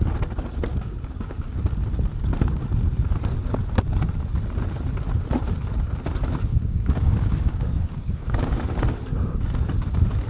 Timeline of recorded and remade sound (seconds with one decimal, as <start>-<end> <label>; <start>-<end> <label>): 0.0-0.7 recorded; 0.7-1.5 remade; 1.5-6.5 recorded; 6.5-8.6 remade; 8.6-10.3 recorded